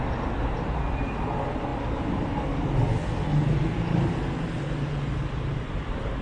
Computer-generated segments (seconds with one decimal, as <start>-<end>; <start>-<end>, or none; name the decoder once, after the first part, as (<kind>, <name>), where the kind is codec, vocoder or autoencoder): none